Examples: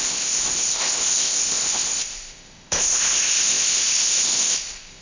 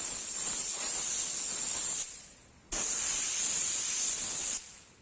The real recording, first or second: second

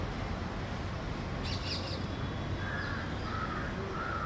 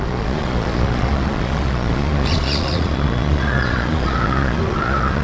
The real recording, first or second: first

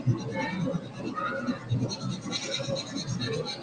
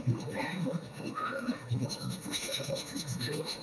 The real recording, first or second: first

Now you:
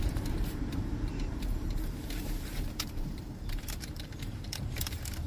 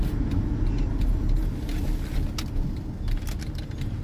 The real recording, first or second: second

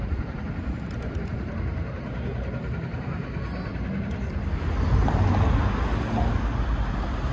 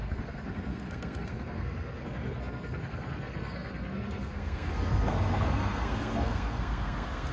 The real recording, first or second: first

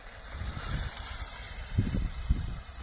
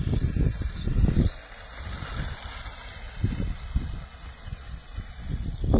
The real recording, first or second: second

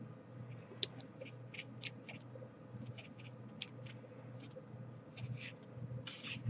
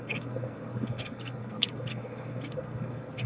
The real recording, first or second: first